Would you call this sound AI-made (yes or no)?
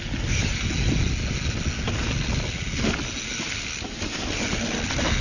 no